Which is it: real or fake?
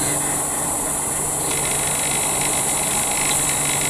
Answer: real